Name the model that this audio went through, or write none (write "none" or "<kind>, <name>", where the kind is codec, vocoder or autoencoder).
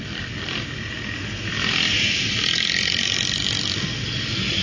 none